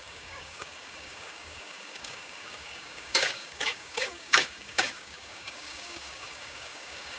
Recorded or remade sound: remade